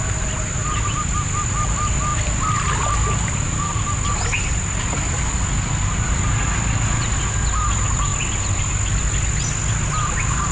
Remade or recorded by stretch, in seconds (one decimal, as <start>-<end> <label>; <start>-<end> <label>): 0.0-10.5 recorded